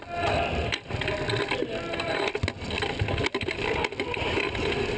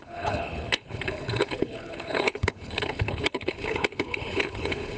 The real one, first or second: first